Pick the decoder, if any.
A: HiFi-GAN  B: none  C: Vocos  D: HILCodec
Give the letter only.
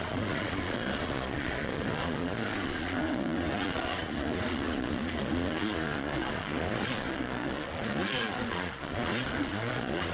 C